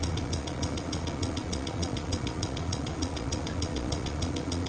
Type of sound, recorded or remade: remade